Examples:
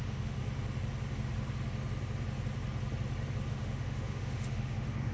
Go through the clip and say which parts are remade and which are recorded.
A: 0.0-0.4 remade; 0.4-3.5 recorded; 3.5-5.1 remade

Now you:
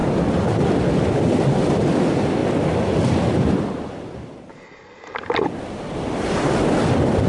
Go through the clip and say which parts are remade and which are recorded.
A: 0.0-1.2 recorded; 1.2-2.4 remade; 2.4-5.9 recorded; 5.9-7.3 remade